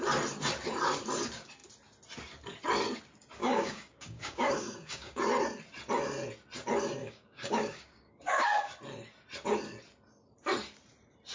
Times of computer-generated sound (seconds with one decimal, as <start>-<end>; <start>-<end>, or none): 3.4-5.2; 7.0-8.7